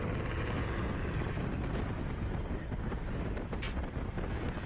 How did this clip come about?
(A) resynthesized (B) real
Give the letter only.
B